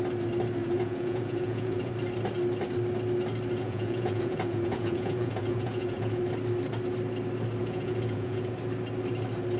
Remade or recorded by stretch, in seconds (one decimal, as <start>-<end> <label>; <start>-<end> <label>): 0.0-0.6 recorded; 0.6-1.9 remade; 1.9-3.6 recorded; 3.6-6.2 remade; 6.2-7.6 recorded; 7.6-8.5 remade; 8.5-9.6 recorded